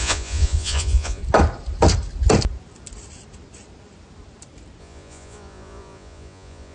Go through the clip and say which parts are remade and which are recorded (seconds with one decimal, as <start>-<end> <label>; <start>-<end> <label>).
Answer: 0.0-1.2 remade; 1.2-4.8 recorded; 4.8-6.7 remade

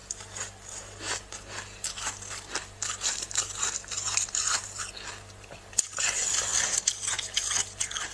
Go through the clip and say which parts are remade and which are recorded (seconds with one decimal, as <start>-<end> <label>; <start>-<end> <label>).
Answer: 0.0-8.1 recorded

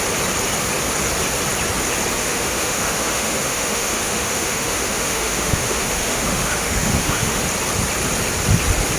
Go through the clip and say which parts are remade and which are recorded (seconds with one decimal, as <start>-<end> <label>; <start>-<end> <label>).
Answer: 0.0-2.2 recorded; 2.2-7.4 remade; 7.4-9.0 recorded